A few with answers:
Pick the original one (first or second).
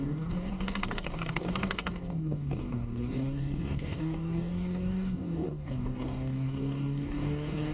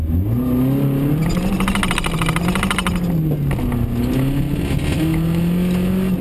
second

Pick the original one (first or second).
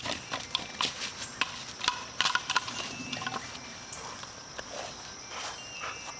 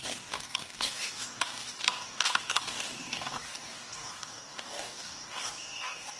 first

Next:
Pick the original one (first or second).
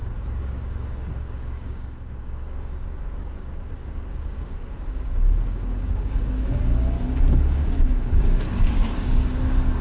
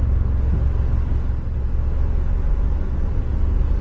second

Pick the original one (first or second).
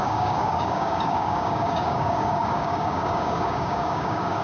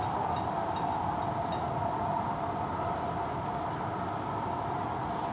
second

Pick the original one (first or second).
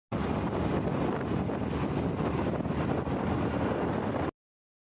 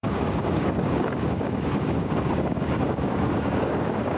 first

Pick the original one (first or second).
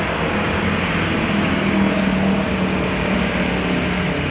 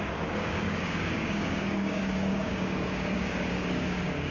first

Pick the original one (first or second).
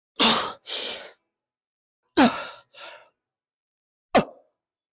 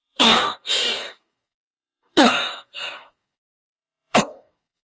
first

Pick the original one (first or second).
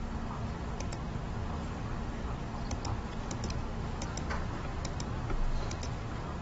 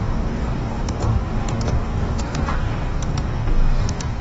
first